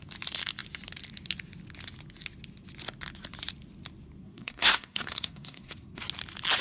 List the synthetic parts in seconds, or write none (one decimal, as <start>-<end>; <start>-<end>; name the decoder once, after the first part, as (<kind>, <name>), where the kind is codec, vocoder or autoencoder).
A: 4.2-6.0 (codec, SNAC)